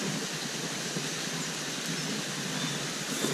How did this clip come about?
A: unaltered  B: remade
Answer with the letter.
A